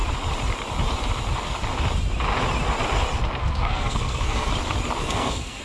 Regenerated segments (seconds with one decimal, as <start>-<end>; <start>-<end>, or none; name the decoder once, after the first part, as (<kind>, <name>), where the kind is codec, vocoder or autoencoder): 3.4-4.5 (codec, SNAC); 5.0-5.6